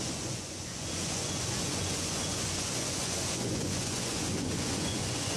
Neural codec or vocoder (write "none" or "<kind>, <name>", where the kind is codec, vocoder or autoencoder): vocoder, Vocos